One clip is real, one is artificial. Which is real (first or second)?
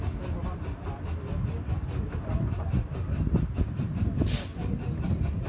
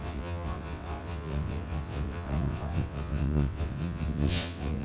first